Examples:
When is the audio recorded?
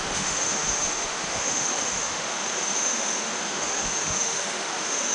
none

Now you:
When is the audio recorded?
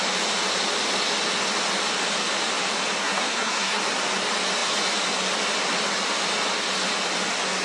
0.0-3.0; 3.8-7.6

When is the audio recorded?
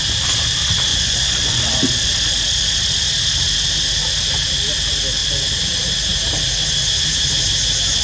0.0-0.9; 1.6-8.0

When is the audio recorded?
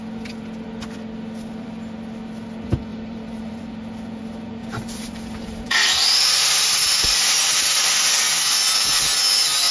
0.0-2.9; 3.6-4.6; 7.8-9.7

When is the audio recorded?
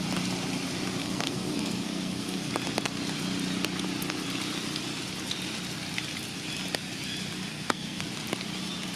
0.0-1.0; 2.5-7.5; 8.1-9.0